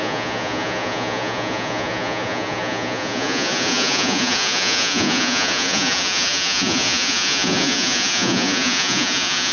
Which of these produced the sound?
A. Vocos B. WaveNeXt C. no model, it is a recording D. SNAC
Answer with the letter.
A